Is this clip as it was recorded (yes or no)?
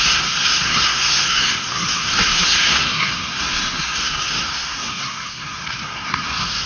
no